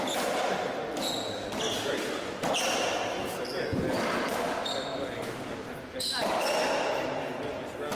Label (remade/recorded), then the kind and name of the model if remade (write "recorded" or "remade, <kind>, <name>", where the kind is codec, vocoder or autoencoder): recorded